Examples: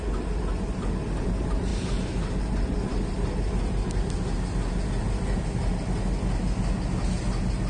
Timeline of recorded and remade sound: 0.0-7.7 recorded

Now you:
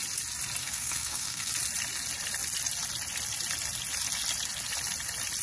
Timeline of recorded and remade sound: 0.0-0.6 recorded; 0.6-1.5 remade; 1.5-5.4 recorded

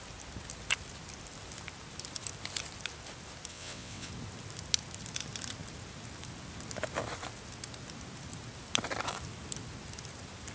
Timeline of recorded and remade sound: 0.0-3.5 recorded; 3.5-4.1 remade; 4.1-10.5 recorded

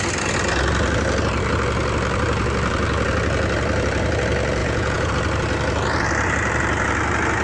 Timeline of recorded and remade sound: 0.0-4.6 recorded; 4.6-5.1 remade; 5.1-7.4 recorded

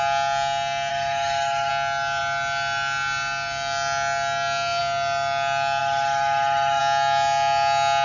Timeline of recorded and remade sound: 0.0-0.9 recorded; 0.9-1.7 remade; 1.7-5.8 recorded; 5.8-6.8 remade; 6.8-8.0 recorded

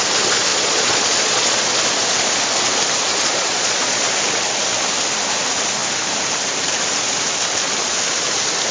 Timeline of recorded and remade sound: 0.0-0.5 recorded; 0.5-1.7 remade; 1.7-3.1 recorded; 3.1-4.1 remade; 4.1-8.7 recorded

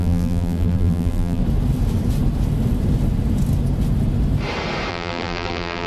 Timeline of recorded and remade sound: 0.0-1.4 remade; 1.4-4.9 recorded; 4.9-5.9 remade

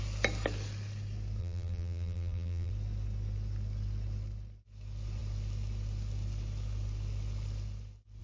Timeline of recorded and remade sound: 0.0-1.4 recorded; 1.4-2.7 remade; 2.7-8.2 recorded